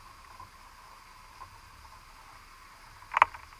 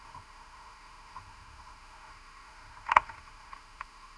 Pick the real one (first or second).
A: first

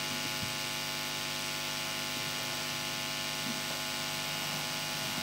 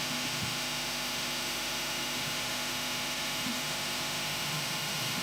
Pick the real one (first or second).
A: first